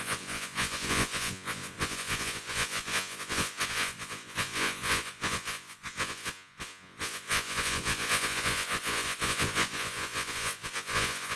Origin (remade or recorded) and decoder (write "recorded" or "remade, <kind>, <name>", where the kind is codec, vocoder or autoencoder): remade, vocoder, Vocos